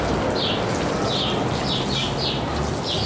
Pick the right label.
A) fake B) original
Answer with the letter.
B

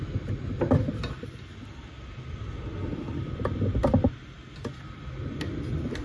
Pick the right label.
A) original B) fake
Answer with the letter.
A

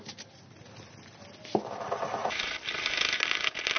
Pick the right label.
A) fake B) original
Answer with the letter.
B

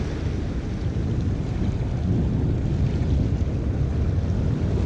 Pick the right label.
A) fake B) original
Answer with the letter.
B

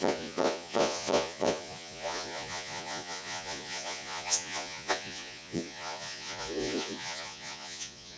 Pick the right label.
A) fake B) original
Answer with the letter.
A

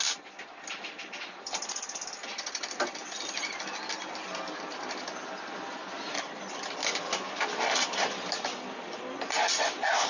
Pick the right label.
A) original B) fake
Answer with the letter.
A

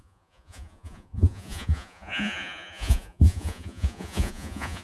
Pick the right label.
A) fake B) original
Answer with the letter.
A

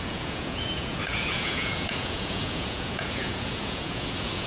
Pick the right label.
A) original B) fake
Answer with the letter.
B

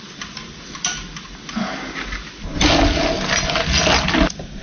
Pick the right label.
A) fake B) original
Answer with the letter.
B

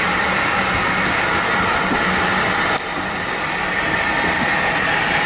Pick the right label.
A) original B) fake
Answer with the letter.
A